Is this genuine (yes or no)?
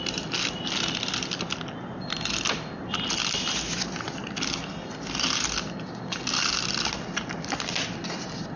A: yes